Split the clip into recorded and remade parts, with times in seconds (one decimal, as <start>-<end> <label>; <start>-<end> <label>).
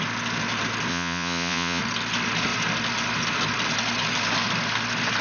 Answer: 0.0-0.9 recorded; 0.9-1.8 remade; 1.8-5.2 recorded